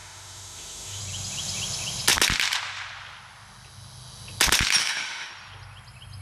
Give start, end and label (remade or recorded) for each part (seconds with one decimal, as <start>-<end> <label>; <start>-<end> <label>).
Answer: 0.0-1.0 remade; 1.0-4.8 recorded; 4.8-5.3 remade; 5.3-6.2 recorded